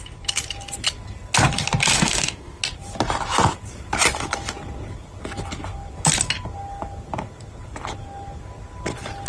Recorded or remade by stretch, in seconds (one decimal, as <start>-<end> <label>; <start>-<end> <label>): 0.0-1.9 recorded; 1.9-2.6 remade; 2.6-9.3 recorded